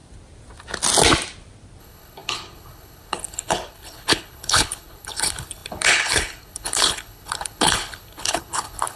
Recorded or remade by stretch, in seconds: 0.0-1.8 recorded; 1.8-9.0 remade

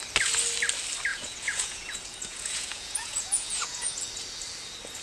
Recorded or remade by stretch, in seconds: 0.0-1.1 recorded; 1.1-4.1 remade; 4.1-5.0 recorded